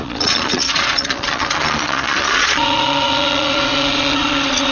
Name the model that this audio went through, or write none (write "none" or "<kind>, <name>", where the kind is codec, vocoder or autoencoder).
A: vocoder, Vocos